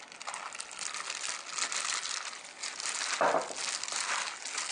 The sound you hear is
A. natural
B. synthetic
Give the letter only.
A